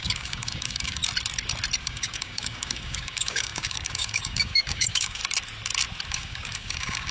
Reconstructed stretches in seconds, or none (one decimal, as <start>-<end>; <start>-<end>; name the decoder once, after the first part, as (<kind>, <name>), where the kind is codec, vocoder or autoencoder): 0.0-1.0 (codec, DAC); 1.8-5.2; 6.1-7.1